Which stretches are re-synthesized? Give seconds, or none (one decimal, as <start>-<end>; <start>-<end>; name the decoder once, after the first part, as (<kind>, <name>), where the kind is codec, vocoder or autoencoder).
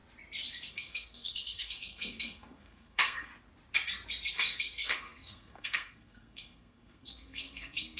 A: 0.7-3.3 (codec, SNAC); 4.3-8.0